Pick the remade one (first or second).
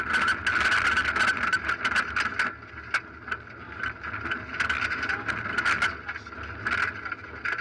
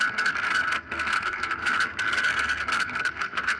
second